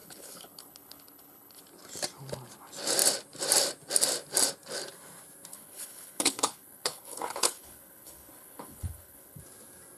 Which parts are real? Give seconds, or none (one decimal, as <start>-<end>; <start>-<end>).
1.6-5.5; 9.4-10.0